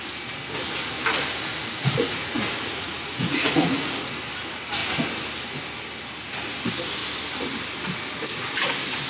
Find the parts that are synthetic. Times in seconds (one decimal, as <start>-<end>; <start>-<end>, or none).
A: 1.5-4.1